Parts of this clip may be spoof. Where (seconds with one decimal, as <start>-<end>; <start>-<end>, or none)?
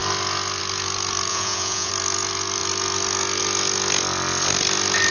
1.3-1.9